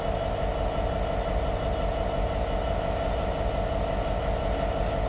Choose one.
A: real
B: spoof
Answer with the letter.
A